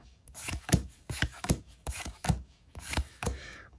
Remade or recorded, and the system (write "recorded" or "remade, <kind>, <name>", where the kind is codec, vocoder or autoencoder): remade, codec, DAC